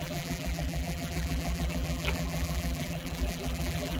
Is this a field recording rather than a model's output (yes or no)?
no